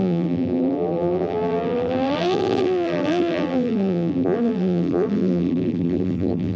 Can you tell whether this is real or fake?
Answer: fake